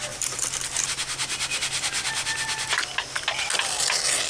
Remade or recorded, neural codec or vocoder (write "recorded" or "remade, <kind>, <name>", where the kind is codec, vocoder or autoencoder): recorded